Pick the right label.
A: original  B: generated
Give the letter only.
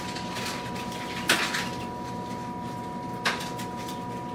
A